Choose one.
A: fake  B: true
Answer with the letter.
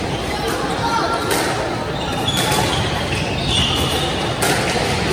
B